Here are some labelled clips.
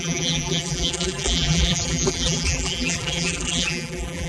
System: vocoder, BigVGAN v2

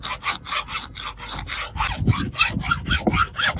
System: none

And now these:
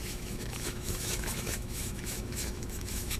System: autoencoder, DAC-VAE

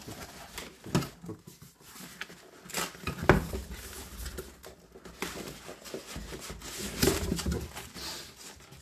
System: none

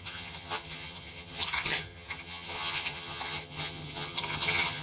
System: vocoder, HiFi-GAN